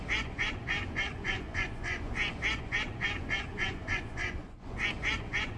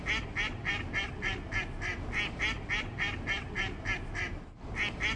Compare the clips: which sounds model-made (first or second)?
first